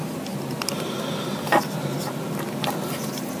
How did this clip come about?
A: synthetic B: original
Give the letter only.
B